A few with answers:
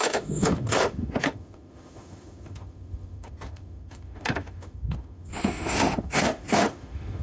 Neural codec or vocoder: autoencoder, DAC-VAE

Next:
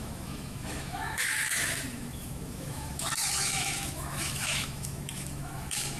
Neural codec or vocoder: autoencoder, DAC-VAE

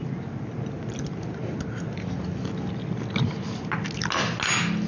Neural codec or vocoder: none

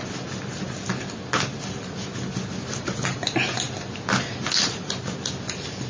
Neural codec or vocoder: none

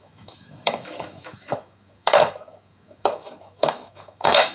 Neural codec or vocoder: autoencoder, DAC-VAE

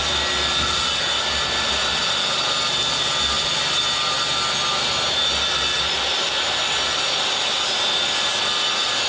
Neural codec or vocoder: none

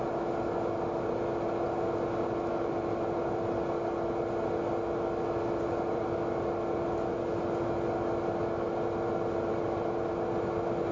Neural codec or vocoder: none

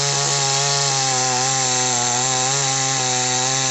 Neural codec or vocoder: none